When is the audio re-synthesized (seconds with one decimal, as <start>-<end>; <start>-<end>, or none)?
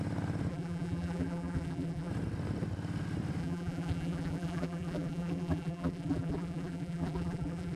0.5-2.1; 3.4-7.8